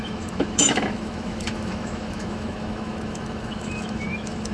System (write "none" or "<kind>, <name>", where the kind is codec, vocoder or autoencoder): autoencoder, DAC-VAE